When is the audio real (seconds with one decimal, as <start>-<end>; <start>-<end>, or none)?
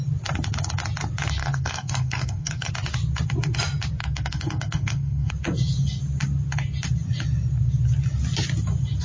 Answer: 0.0-1.4; 2.7-4.0; 5.3-9.0